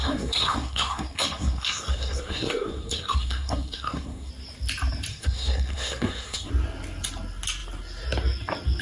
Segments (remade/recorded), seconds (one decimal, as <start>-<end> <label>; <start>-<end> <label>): 0.0-4.3 remade; 4.3-5.1 recorded; 5.1-6.5 remade; 6.5-8.8 recorded